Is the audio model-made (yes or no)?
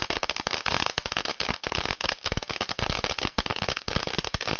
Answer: yes